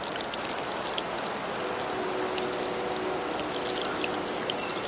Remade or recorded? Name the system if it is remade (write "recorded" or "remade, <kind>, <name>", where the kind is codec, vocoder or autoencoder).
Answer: recorded